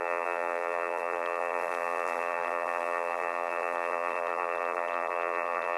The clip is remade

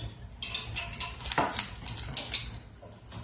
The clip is recorded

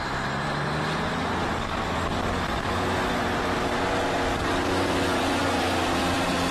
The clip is remade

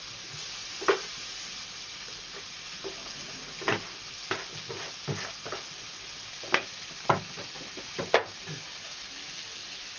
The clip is recorded